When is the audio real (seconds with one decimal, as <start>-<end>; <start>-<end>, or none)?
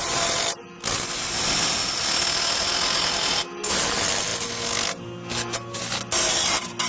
0.0-6.9